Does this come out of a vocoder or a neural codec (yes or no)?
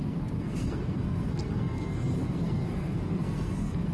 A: yes